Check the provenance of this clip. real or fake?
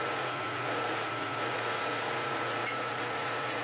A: fake